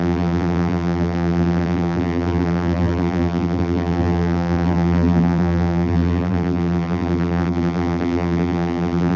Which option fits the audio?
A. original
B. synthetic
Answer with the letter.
B